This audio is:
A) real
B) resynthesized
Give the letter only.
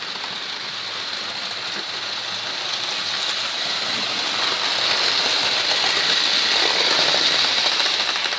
A